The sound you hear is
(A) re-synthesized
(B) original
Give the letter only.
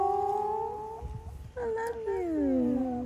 B